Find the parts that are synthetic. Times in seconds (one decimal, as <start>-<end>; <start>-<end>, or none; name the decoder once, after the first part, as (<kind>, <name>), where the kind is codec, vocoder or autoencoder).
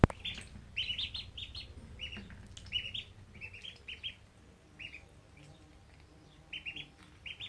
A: none